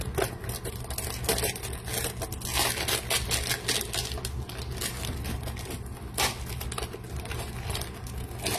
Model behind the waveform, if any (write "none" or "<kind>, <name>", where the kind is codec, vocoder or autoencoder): none